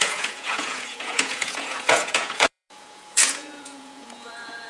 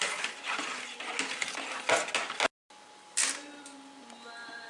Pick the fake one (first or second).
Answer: first